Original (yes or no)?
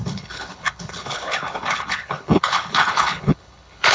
no